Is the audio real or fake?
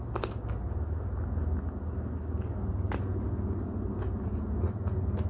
real